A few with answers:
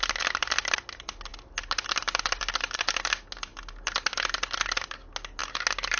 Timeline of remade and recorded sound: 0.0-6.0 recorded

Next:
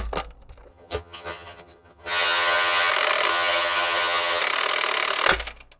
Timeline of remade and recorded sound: 0.0-0.7 recorded; 0.7-2.9 remade; 2.9-3.3 recorded; 3.3-4.4 remade; 4.4-5.8 recorded

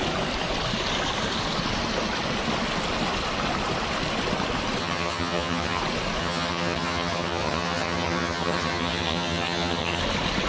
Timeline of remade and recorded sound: 0.0-4.8 recorded; 4.8-5.8 remade; 5.8-6.2 recorded; 6.2-10.0 remade; 10.0-10.5 recorded

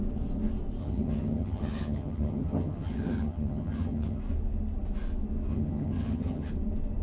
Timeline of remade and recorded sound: 0.0-0.8 recorded; 0.8-4.2 remade; 4.2-5.5 recorded; 5.5-6.5 remade; 6.5-7.0 recorded

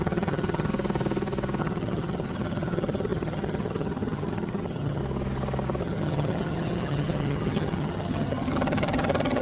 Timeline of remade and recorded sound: 0.0-0.7 remade; 0.7-1.6 recorded; 1.6-5.0 remade; 5.0-5.8 recorded; 5.8-9.4 remade

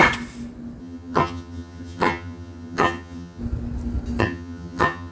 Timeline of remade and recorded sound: 0.0-0.8 recorded; 0.8-3.4 remade; 3.4-4.2 recorded; 4.2-5.1 remade

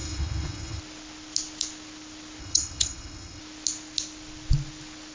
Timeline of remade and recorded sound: 0.0-0.8 remade; 0.8-2.4 recorded; 2.4-3.4 remade; 3.4-5.1 recorded